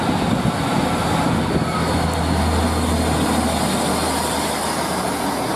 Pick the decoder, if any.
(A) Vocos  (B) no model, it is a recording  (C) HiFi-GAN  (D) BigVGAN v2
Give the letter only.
B